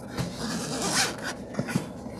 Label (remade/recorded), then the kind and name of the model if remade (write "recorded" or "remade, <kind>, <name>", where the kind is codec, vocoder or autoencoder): recorded